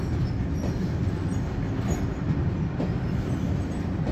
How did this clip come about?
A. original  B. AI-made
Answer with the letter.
A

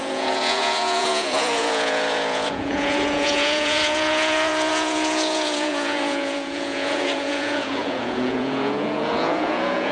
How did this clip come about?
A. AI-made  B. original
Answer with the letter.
A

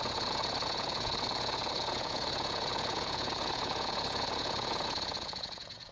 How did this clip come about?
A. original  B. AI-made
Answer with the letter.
B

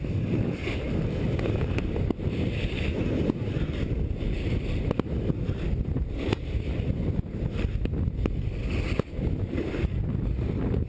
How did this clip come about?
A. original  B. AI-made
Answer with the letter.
A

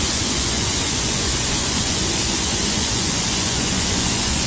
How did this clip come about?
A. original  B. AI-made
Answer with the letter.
B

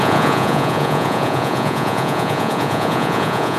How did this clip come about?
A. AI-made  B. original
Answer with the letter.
A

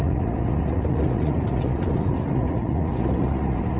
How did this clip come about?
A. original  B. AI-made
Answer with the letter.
B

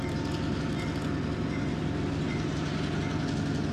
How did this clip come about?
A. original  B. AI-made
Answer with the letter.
A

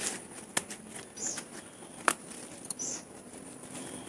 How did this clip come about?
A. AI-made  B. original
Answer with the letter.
B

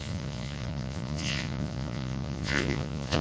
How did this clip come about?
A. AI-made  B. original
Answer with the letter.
A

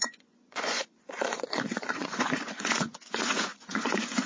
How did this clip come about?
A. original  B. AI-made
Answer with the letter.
B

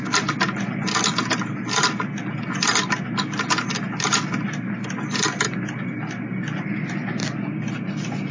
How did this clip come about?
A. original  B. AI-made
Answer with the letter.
A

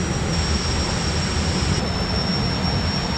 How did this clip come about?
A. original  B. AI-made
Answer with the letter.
A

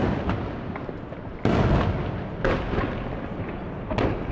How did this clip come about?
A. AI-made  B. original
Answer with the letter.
B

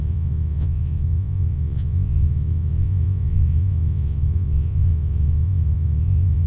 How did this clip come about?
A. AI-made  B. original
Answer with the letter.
A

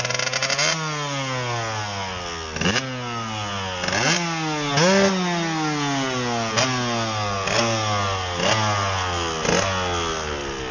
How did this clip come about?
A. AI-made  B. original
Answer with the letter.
B